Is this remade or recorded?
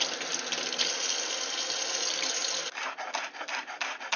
recorded